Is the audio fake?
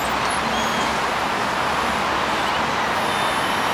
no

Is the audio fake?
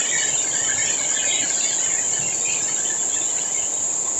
no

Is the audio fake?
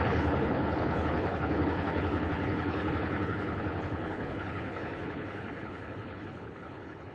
yes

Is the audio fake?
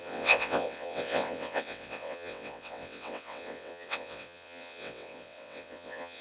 yes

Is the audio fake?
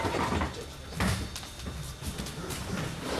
no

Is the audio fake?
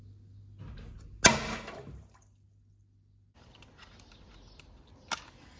no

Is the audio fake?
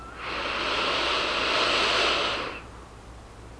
no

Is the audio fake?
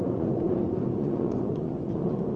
yes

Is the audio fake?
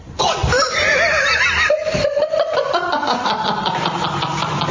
yes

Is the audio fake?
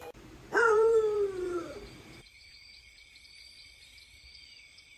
yes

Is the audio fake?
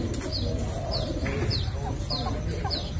no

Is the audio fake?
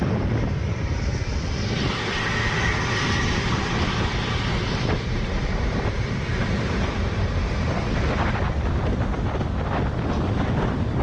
yes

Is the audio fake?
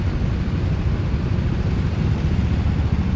no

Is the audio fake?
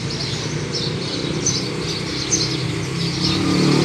no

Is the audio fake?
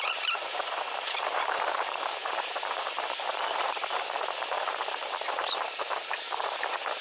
yes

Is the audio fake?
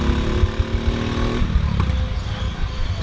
no